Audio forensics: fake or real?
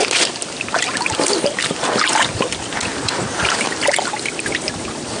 real